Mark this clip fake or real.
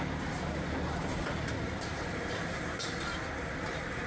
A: real